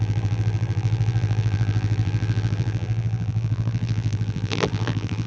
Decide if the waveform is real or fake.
fake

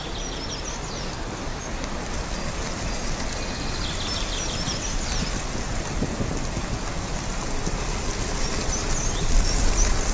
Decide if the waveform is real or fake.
real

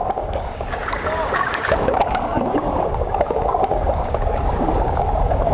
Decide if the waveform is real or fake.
fake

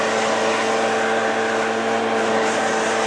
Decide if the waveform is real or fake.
real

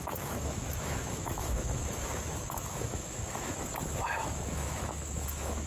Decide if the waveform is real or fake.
fake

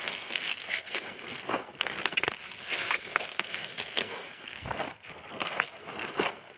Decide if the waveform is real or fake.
fake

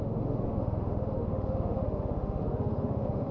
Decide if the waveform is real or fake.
fake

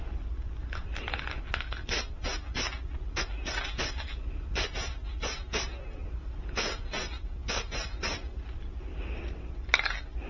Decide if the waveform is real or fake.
real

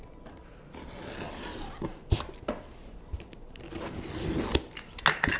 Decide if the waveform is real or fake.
real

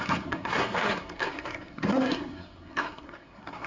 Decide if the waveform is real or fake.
fake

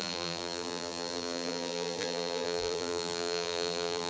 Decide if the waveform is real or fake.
fake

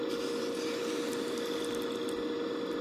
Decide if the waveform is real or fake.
real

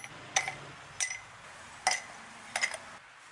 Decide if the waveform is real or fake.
real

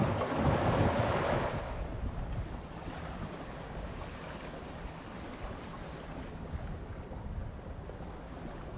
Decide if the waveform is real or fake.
real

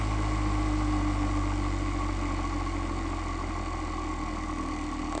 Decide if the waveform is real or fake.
real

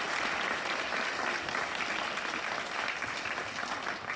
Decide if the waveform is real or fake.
real